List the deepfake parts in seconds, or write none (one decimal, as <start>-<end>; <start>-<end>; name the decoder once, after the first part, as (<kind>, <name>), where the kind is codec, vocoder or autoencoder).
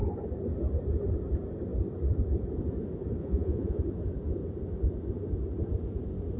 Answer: 3.2-3.8 (vocoder, Vocos)